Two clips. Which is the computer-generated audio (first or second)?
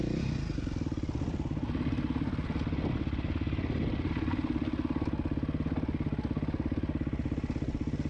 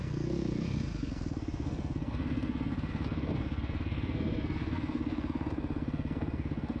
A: second